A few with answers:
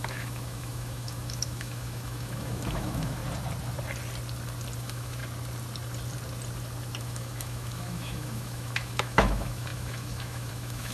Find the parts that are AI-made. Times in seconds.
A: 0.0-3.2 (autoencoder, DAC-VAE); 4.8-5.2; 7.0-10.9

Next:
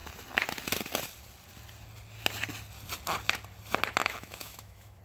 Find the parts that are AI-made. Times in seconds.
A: 4.0-5.0 (autoencoder, DAC-VAE)